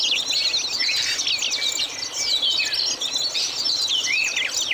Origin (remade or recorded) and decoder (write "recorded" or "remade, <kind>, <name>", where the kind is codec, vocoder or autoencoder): recorded